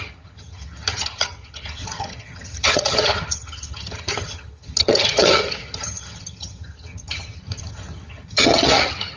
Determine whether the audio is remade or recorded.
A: remade